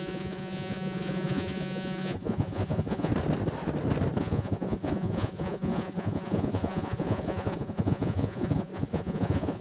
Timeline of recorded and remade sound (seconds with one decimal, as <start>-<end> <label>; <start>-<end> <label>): 0.0-3.1 remade; 3.1-4.2 recorded; 4.2-9.6 remade